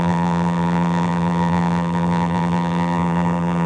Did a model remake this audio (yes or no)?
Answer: yes